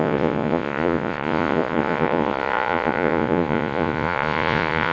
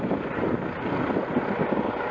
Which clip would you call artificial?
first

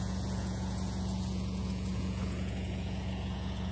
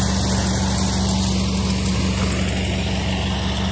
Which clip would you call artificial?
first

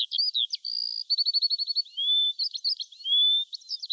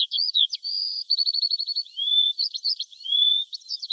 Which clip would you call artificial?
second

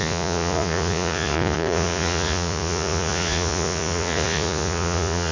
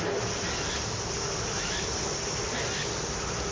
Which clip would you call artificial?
first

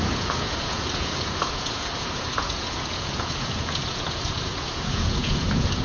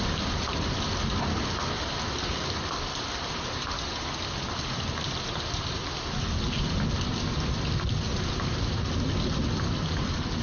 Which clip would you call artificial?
first